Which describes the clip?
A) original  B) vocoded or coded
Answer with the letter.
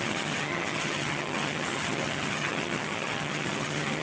B